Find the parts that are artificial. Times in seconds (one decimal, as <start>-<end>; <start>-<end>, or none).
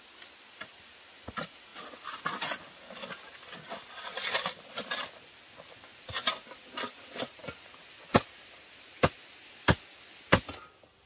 none